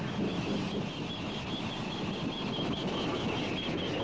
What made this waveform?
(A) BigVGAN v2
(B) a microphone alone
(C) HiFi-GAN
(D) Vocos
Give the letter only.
B